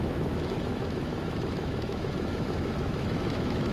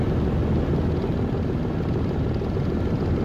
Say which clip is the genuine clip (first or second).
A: second